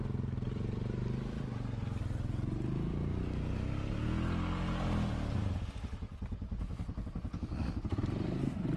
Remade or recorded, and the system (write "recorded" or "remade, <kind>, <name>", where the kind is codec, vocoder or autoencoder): recorded